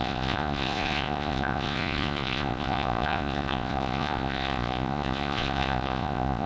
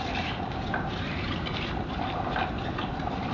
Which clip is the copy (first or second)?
first